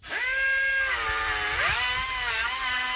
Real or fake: real